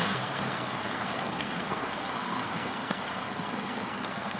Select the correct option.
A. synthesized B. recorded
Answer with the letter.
A